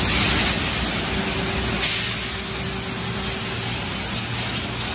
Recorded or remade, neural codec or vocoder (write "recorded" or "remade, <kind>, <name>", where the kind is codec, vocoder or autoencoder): recorded